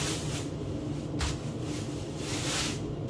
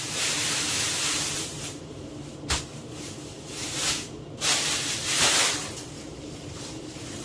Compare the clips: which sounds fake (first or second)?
second